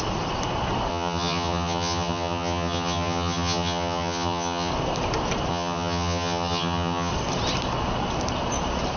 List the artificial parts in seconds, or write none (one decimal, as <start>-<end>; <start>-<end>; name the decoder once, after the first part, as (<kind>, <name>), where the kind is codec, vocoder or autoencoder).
0.9-4.7 (vocoder, HiFi-GAN); 5.5-7.1